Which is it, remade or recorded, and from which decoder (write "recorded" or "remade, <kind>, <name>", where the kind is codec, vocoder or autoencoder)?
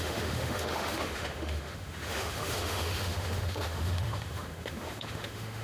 remade, autoencoder, DAC-VAE